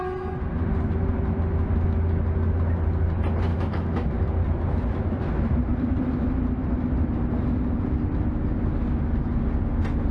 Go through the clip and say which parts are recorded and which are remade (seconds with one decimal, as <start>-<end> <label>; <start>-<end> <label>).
0.0-3.5 recorded; 3.5-4.1 remade; 4.1-10.1 recorded